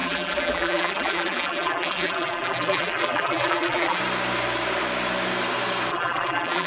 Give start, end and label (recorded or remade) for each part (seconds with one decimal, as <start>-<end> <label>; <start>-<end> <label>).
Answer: 0.0-4.0 remade; 4.0-5.9 recorded; 5.9-6.7 remade